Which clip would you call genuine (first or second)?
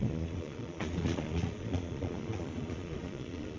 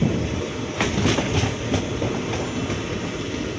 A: second